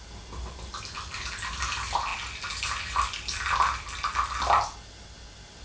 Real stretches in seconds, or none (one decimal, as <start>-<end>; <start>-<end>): 0.0-5.6